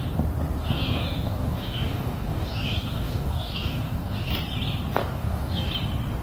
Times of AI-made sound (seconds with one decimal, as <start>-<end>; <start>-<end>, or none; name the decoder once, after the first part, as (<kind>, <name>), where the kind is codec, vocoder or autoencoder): 0.6-4.3 (codec, DAC); 5.0-5.7